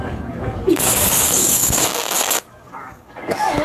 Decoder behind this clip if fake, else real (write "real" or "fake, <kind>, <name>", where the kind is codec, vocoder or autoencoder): fake, codec, DAC